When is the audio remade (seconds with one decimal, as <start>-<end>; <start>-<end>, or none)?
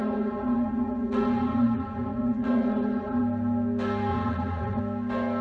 0.0-3.2; 4.1-4.8